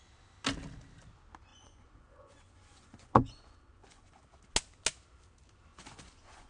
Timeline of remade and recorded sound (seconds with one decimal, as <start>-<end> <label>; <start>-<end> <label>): 0.0-1.5 recorded; 1.5-4.2 remade; 4.2-5.7 recorded; 5.7-6.5 remade